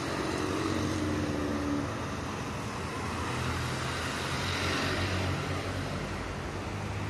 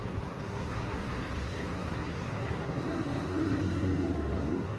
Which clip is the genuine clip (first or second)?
first